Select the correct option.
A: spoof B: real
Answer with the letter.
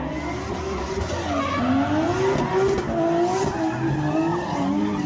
B